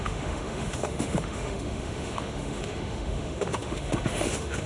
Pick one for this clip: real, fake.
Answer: fake